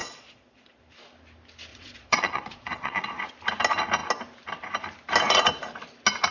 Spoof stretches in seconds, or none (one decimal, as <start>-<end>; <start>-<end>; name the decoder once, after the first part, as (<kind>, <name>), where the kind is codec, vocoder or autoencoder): 0.0-0.8 (vocoder, Vocos); 1.7-3.3